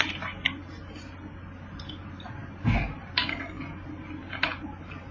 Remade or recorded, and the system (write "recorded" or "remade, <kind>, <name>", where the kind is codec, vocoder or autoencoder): recorded